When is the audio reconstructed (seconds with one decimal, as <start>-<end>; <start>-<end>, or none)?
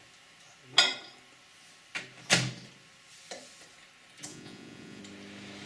4.3-5.0